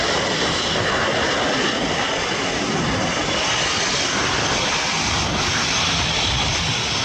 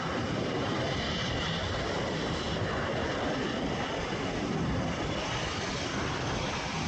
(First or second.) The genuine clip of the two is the first